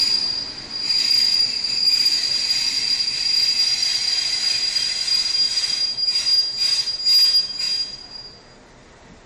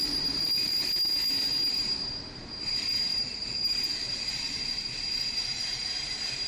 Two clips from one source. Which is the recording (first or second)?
first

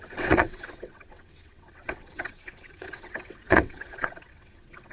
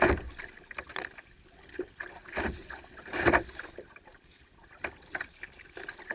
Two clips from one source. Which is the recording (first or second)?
second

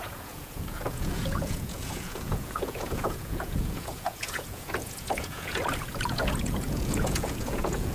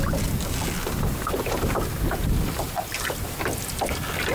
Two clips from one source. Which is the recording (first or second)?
second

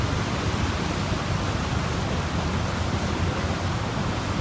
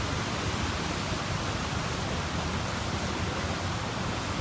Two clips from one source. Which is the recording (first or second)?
first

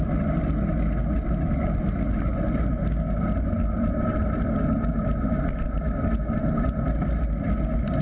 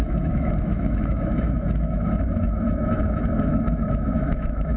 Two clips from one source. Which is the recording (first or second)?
first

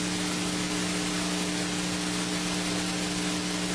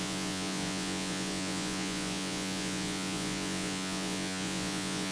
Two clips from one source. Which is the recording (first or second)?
first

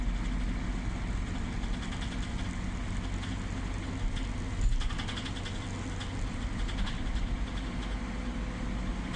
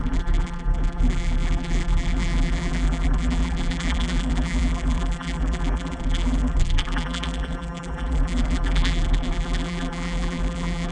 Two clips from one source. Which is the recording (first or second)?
first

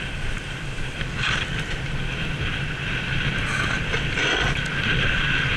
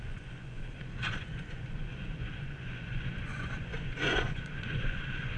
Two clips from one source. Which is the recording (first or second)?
first